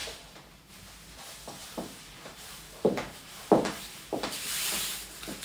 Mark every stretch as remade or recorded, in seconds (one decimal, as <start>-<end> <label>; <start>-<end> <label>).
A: 0.0-0.7 remade; 0.7-1.6 recorded; 1.6-4.7 remade; 4.7-5.4 recorded